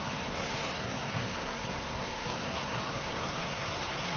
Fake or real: fake